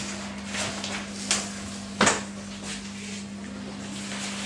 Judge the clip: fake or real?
real